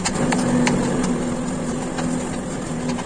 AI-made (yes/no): no